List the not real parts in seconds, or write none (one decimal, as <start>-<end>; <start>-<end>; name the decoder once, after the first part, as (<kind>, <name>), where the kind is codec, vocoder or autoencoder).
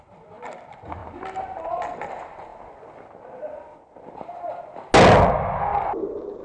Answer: none